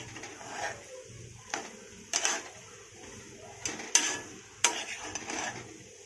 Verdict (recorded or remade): recorded